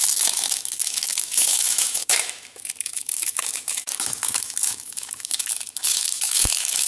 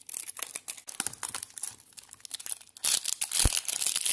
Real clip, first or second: second